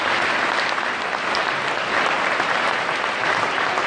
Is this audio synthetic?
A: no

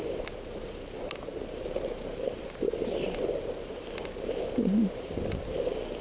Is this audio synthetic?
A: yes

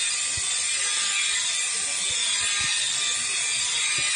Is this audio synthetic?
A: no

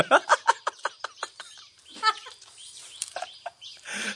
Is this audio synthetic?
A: yes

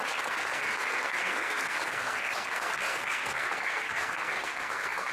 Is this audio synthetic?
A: yes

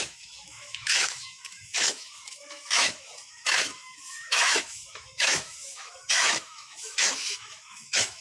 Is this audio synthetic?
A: yes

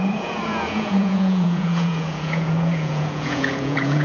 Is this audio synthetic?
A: yes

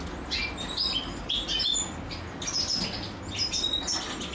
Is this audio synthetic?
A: no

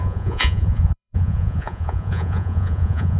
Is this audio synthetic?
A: yes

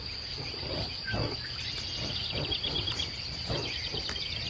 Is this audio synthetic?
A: no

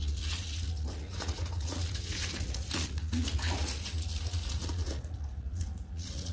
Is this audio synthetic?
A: yes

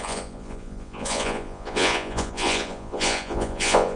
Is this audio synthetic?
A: yes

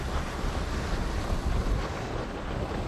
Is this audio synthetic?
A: no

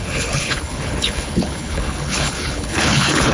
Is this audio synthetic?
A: yes